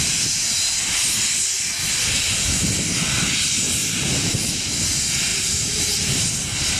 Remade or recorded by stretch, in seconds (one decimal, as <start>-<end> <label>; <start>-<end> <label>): 0.0-3.8 recorded; 3.8-4.5 remade; 4.5-5.3 recorded; 5.3-6.8 remade